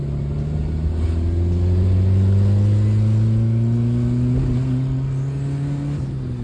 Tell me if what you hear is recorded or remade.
recorded